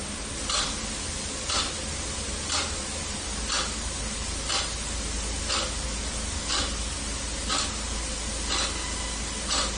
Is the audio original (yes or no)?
yes